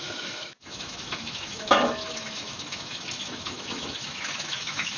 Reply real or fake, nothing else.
fake